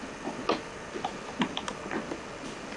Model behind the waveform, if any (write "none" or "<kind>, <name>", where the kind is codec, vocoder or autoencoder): none